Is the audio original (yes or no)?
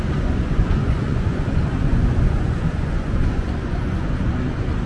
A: no